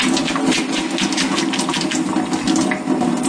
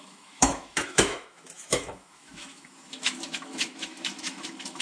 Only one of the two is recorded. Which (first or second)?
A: first